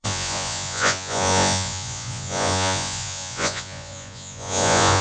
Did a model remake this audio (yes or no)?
yes